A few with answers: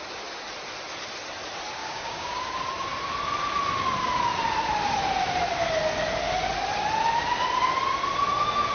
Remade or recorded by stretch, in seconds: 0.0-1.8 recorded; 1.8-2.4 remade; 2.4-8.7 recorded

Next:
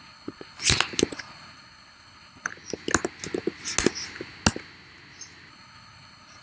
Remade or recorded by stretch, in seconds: 0.0-0.6 remade; 0.6-1.1 recorded; 1.1-2.5 remade; 2.5-5.5 recorded; 5.5-6.4 remade

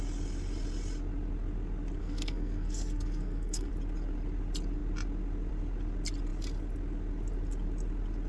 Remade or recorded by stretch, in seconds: 0.0-2.0 recorded; 2.0-3.7 remade; 3.7-8.3 recorded